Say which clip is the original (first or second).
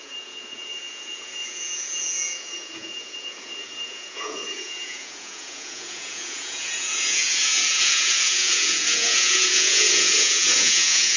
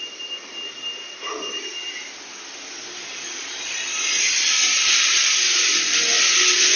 second